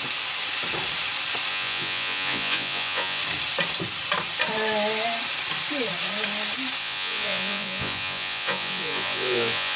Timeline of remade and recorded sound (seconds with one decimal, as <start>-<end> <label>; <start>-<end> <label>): 0.0-1.5 recorded; 1.5-3.2 remade; 3.2-6.8 recorded; 6.8-9.8 remade